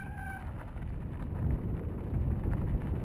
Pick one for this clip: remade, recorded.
recorded